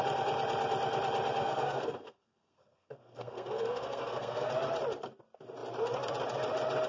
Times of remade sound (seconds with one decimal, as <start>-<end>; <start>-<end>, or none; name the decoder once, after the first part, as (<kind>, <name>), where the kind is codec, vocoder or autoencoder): 1.4-4.5 (codec, SNAC)